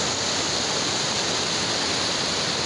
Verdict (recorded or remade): recorded